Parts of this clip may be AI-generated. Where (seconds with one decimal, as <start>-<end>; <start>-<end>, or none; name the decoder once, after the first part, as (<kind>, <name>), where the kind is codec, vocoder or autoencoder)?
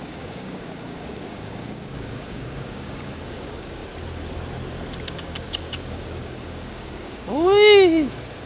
0.0-3.8 (codec, DAC); 5.1-8.5